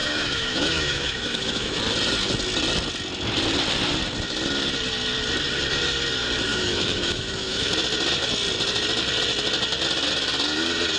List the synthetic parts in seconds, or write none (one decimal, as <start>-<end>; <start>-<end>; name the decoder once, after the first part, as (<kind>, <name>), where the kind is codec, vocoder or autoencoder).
0.0-1.8 (autoencoder, DAC-VAE); 6.5-7.7